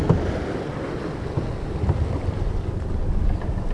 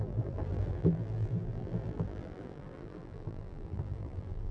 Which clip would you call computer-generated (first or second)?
second